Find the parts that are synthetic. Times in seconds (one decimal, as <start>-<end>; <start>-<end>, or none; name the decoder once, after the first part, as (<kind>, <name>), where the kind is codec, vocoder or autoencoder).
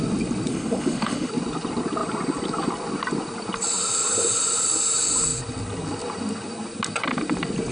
0.5-1.3 (autoencoder, DAC-VAE)